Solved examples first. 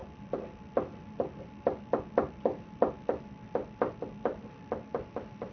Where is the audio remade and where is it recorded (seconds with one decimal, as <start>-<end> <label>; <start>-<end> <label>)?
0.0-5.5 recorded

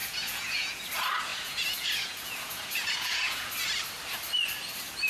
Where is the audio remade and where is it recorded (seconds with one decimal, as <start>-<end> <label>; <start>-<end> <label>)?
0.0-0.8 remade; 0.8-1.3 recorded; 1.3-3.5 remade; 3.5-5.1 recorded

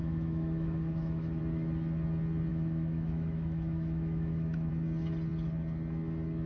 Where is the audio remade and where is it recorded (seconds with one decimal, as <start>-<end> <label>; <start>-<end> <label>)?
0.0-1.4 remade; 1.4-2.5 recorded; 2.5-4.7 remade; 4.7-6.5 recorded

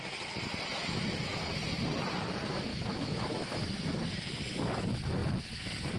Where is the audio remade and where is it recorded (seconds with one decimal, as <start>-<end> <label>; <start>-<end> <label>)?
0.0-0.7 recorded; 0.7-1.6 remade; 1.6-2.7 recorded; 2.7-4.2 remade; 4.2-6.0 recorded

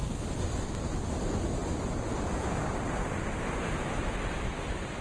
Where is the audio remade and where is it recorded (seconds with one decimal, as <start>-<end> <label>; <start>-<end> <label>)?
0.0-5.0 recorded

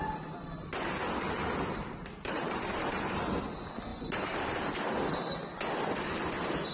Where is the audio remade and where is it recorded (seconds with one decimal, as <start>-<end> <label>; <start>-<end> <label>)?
0.0-1.8 recorded; 1.8-3.0 remade; 3.0-3.9 recorded; 3.9-4.6 remade; 4.6-6.7 recorded

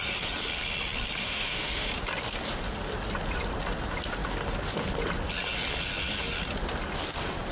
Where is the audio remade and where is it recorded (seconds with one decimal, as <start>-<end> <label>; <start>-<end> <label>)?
0.0-1.2 recorded; 1.2-1.9 remade; 1.9-7.5 recorded